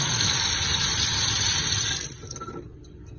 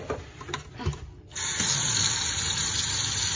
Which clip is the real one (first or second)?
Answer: second